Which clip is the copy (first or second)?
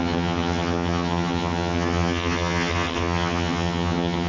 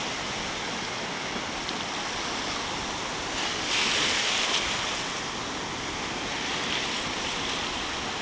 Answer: first